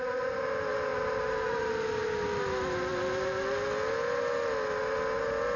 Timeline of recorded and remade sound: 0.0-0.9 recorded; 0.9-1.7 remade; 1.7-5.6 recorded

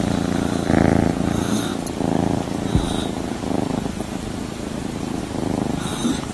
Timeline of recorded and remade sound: 0.0-6.3 recorded

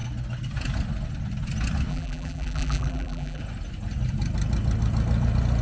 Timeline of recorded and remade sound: 0.0-1.9 recorded; 1.9-3.4 remade; 3.4-5.6 recorded

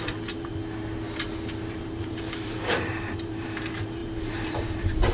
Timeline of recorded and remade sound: 0.0-0.5 remade; 0.5-1.7 recorded; 1.7-5.1 remade

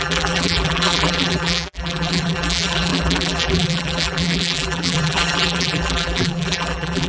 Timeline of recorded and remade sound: 0.0-7.1 remade

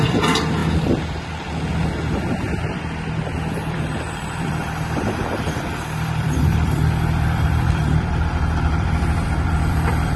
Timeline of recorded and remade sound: 0.0-0.6 remade; 0.6-3.7 recorded; 3.7-10.2 remade

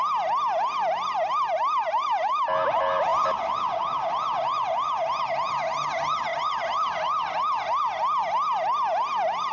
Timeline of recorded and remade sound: 0.0-6.3 recorded; 6.3-7.8 remade; 7.8-9.5 recorded

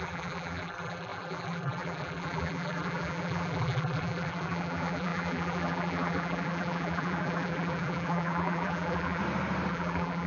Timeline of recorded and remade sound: 0.0-9.2 remade; 9.2-9.7 recorded; 9.7-10.3 remade